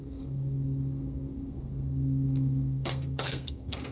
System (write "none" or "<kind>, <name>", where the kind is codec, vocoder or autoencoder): codec, SNAC